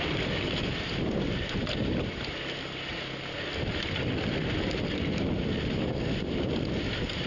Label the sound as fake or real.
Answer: real